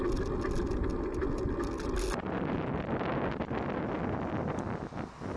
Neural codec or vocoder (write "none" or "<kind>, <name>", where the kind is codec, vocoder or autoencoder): none